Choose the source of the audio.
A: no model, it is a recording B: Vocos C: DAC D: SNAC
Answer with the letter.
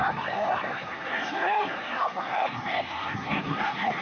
D